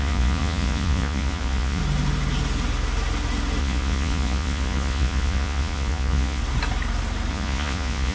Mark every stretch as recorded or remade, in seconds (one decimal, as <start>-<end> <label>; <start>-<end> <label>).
0.0-1.8 remade; 1.8-3.6 recorded; 3.6-6.4 remade; 6.4-7.3 recorded; 7.3-8.1 remade